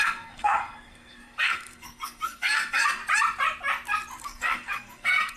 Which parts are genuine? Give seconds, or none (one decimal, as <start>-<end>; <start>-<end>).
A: 3.0-4.2